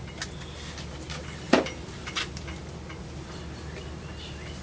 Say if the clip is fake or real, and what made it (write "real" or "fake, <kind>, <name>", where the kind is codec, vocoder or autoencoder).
real